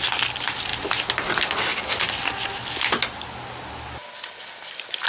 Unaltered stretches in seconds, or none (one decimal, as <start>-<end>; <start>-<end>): 0.0-5.1